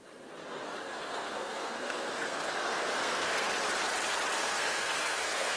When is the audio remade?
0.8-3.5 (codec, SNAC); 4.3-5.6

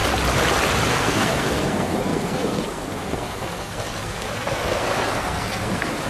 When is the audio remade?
0.9-6.1 (codec, SNAC)

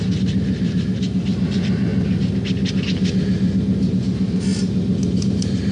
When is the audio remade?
0.0-1.9 (vocoder, BigVGAN v2); 3.9-4.5; 5.1-5.7

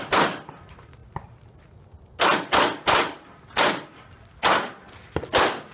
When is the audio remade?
none

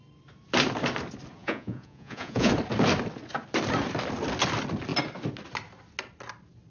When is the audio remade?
1.4-2.5 (vocoder, Vocos)